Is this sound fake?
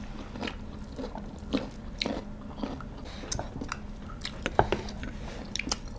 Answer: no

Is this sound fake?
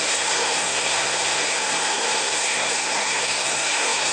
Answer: yes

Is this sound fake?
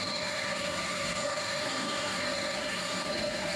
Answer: yes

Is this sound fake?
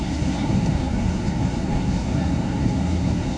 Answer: yes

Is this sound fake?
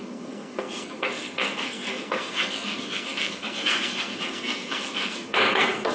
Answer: yes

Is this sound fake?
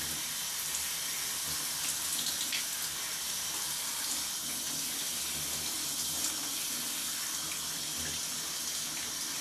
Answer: no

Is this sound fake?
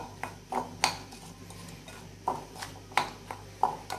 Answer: no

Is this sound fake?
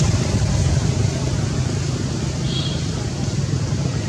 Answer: no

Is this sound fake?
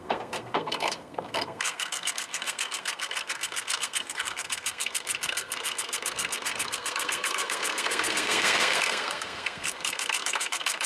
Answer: yes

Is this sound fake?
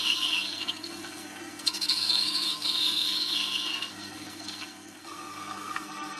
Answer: yes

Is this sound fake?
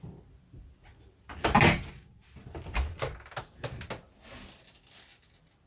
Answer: no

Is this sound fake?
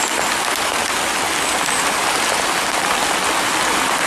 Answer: no